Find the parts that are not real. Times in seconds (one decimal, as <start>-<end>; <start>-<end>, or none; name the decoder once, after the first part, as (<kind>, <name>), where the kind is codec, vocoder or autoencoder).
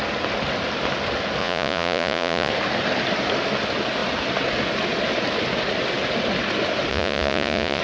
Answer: 1.4-2.5 (vocoder, Vocos); 6.9-7.8